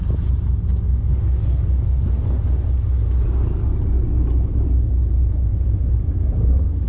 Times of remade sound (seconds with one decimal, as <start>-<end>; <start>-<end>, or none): 5.5-6.1